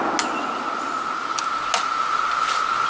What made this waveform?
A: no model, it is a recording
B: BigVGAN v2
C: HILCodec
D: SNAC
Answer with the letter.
A